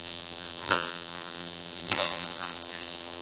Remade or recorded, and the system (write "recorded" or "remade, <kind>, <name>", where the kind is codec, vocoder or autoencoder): remade, vocoder, BigVGAN v2